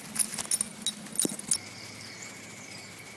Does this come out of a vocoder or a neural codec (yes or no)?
no